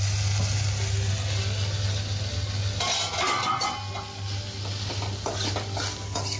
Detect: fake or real real